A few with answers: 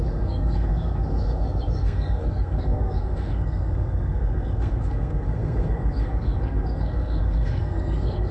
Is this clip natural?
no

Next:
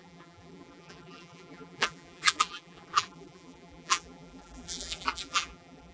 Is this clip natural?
no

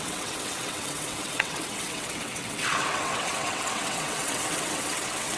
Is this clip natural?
no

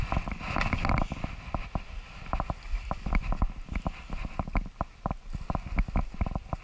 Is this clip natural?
yes